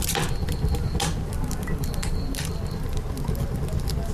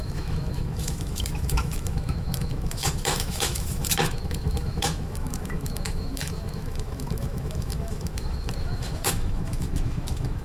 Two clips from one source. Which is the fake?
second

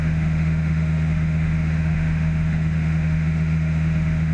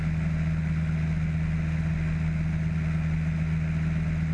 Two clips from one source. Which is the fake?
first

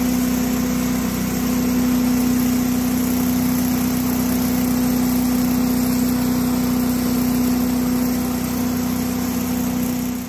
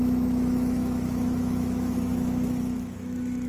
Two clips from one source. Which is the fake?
second